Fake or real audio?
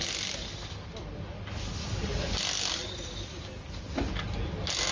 real